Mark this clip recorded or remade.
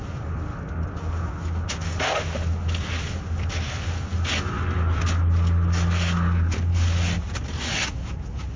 recorded